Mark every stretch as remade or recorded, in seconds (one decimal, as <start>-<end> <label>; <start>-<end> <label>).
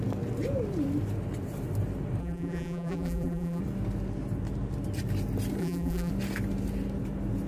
0.0-2.2 recorded; 2.2-3.6 remade; 3.6-5.6 recorded; 5.6-6.1 remade; 6.1-7.5 recorded